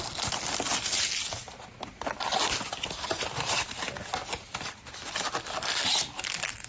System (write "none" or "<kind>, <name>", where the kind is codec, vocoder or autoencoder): none